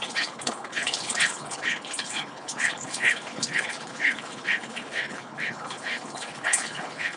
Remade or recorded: remade